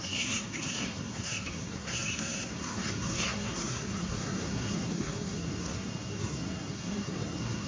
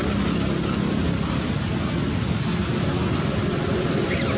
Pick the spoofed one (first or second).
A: first